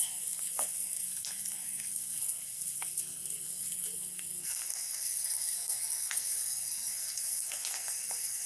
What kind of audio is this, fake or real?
fake